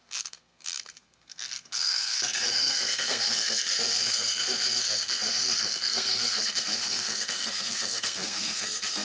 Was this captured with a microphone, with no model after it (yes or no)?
no